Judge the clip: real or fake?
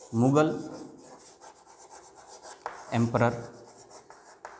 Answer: real